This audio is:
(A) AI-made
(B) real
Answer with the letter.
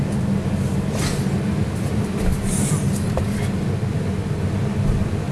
B